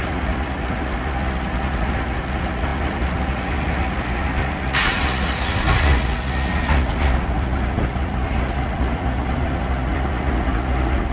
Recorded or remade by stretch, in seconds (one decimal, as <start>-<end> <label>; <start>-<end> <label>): 0.0-11.1 remade